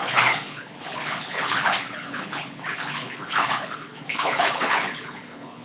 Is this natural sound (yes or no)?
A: no